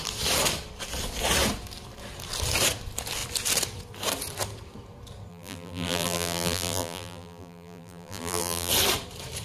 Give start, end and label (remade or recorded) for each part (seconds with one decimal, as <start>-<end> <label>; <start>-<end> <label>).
0.0-5.3 recorded; 5.3-8.7 remade; 8.7-9.4 recorded